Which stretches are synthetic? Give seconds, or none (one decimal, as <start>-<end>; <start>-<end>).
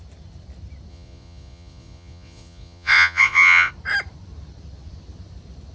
0.9-3.7